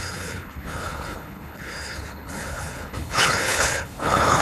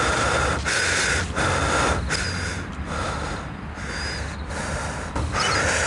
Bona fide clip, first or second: second